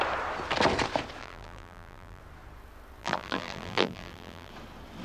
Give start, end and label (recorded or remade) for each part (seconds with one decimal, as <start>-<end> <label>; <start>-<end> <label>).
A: 0.0-1.2 recorded; 1.2-2.2 remade; 2.2-3.0 recorded; 3.0-4.5 remade; 4.5-5.0 recorded